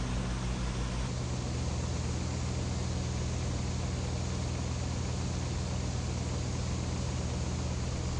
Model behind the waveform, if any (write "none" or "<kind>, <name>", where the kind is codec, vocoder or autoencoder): none